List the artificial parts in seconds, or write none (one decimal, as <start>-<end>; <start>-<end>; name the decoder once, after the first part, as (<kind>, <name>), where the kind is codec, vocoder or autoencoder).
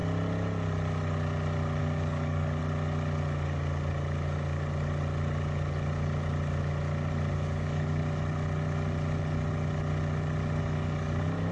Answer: 1.8-2.6 (codec, DAC); 7.3-8.0; 10.6-11.5